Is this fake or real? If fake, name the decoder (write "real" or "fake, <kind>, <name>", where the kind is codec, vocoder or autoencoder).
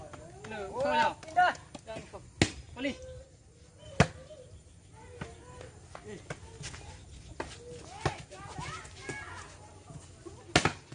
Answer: real